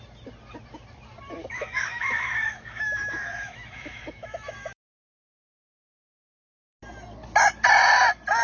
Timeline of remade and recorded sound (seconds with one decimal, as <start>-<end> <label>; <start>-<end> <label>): 0.0-1.4 recorded; 1.4-6.0 remade; 6.0-8.4 recorded